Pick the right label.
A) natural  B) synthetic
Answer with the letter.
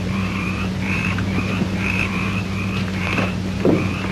B